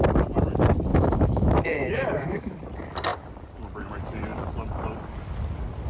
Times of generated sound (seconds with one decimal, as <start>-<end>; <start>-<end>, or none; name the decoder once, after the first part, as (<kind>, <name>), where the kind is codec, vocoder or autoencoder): 0.9-2.6 (autoencoder, DAC-VAE)